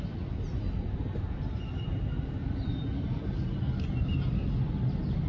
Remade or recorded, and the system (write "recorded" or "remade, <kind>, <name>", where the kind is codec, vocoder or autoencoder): recorded